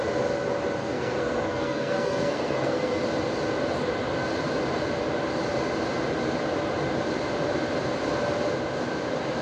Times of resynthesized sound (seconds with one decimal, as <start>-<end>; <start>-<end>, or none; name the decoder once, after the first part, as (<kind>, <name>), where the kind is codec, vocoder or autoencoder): 0.8-3.0 (codec, SNAC)